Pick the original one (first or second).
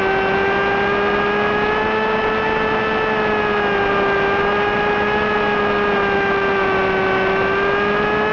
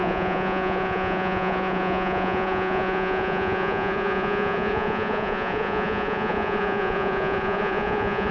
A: first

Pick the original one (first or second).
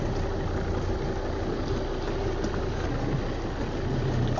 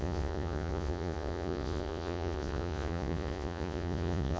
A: first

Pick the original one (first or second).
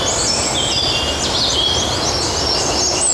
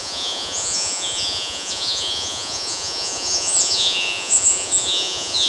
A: first